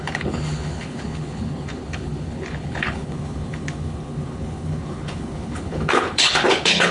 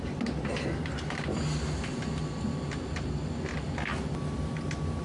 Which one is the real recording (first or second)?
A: second